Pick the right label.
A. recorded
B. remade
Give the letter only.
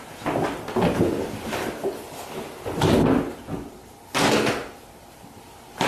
A